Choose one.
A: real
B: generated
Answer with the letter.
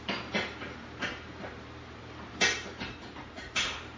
B